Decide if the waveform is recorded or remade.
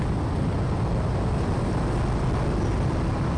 recorded